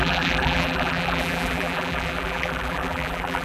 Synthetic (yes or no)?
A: yes